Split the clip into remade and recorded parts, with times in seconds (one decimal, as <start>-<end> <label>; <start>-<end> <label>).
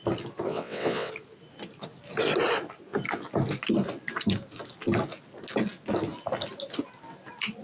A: 0.0-0.5 recorded; 0.5-1.1 remade; 1.1-7.6 recorded